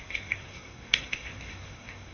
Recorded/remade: remade